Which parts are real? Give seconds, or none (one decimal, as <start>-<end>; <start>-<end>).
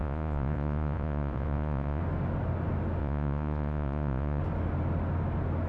2.0-3.0; 4.4-5.7